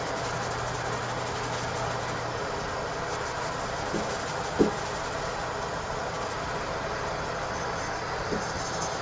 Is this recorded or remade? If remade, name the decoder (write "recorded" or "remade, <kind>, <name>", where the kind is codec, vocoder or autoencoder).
recorded